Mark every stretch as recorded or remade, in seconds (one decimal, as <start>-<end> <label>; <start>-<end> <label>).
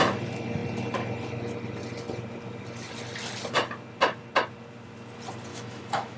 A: 0.0-5.5 recorded; 5.5-6.2 remade